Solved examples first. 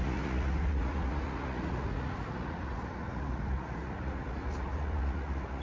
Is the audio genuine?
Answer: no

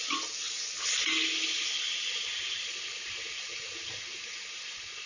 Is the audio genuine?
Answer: yes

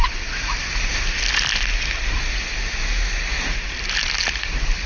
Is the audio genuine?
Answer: yes